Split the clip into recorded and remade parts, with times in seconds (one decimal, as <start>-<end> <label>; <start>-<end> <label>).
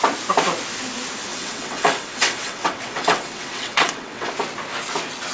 0.0-1.3 recorded; 1.3-4.3 remade; 4.3-5.3 recorded